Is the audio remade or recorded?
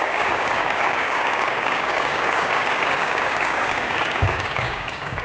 remade